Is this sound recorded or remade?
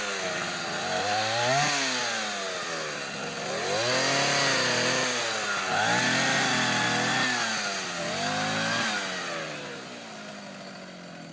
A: recorded